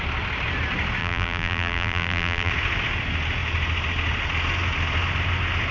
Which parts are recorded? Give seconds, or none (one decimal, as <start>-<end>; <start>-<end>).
0.0-1.0; 2.5-5.7